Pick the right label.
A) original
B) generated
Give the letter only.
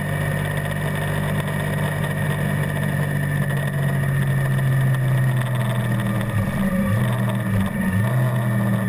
A